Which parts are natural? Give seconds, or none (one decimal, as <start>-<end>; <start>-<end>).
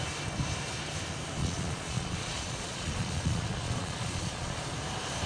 0.0-1.4; 4.6-5.3